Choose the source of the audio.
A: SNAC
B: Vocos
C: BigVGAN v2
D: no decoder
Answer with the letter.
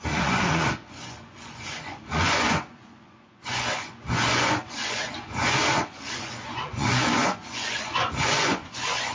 B